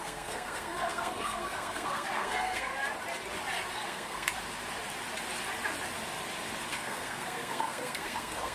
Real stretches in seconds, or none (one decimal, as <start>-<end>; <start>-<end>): 2.7-3.7; 4.3-6.7